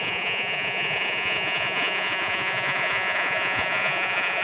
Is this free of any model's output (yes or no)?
no